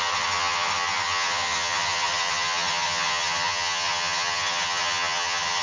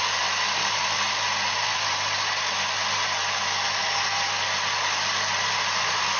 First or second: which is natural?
second